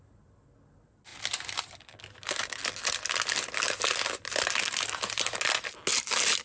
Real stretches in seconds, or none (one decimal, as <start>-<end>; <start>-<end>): 0.0-6.4